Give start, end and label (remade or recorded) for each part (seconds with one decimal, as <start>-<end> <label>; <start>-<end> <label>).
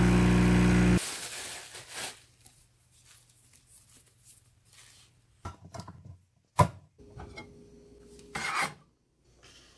0.0-9.8 recorded